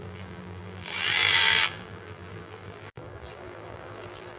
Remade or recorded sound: remade